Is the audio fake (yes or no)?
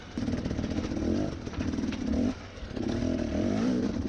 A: yes